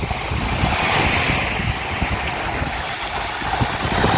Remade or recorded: recorded